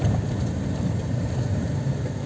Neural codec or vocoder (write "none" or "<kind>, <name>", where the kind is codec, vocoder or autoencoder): vocoder, BigVGAN v2